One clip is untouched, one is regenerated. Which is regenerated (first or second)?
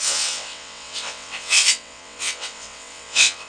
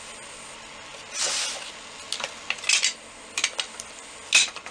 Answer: first